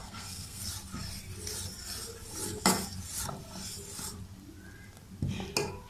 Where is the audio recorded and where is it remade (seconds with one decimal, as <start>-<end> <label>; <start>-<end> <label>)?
0.0-0.6 remade; 0.6-5.9 recorded